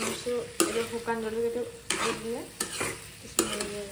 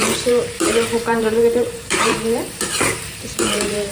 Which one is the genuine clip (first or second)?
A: first